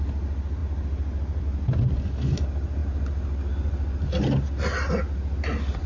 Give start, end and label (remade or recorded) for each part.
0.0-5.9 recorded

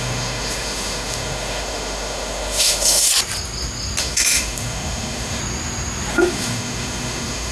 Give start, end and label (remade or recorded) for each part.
0.0-3.1 remade; 3.1-4.0 recorded; 4.0-5.4 remade; 5.4-6.1 recorded; 6.1-7.5 remade

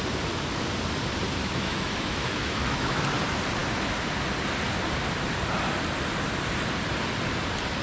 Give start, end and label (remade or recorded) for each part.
0.0-1.4 recorded; 1.4-3.0 remade; 3.0-7.8 recorded

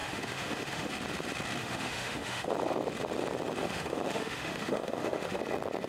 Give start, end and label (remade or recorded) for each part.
0.0-0.9 remade; 0.9-1.6 recorded; 1.6-2.5 remade; 2.5-3.6 recorded; 3.6-5.4 remade; 5.4-5.9 recorded